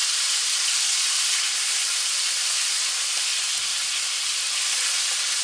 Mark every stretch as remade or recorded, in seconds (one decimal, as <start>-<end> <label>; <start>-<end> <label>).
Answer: 0.0-1.8 remade; 1.8-3.1 recorded; 3.1-3.7 remade; 3.7-5.4 recorded